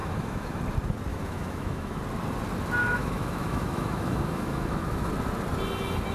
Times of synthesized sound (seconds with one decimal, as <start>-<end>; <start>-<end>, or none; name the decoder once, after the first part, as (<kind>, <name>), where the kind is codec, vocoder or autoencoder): 0.0-0.6 (autoencoder, DAC-VAE); 1.1-2.0; 2.8-5.1